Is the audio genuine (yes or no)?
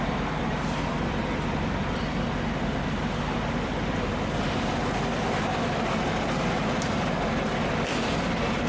yes